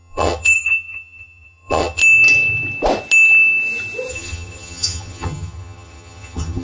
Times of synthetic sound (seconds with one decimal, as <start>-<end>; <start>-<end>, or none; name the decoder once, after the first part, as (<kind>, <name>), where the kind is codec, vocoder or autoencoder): 0.0-2.0 (vocoder, HiFi-GAN); 4.1-6.6